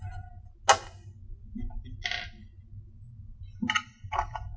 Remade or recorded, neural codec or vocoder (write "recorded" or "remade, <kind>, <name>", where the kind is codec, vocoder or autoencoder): recorded